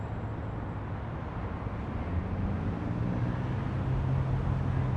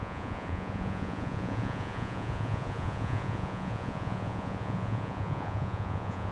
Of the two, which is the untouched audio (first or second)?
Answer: first